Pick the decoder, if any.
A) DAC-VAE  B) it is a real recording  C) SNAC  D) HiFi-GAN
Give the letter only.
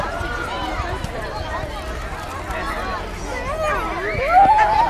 B